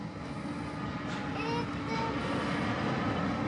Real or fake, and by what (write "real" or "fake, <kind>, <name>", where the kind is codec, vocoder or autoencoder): real